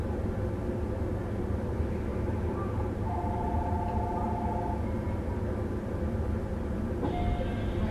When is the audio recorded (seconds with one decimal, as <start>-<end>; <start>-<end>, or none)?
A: 0.0-2.1; 3.2-7.9